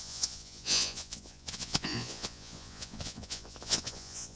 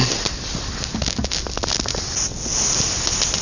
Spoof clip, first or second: first